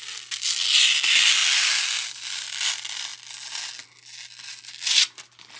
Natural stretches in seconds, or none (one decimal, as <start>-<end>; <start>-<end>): 0.0-5.6